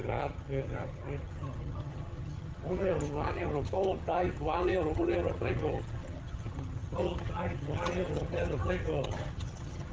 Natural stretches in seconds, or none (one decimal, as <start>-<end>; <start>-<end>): none